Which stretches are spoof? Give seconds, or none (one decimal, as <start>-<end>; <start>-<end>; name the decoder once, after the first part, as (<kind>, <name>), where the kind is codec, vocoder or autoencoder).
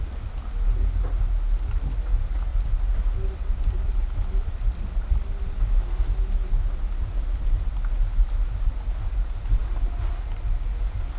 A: 2.5-5.8 (vocoder, BigVGAN v2)